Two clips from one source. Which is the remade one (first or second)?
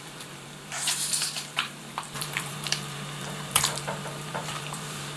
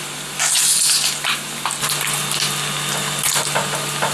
first